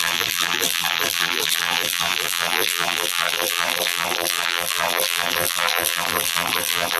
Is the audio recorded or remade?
remade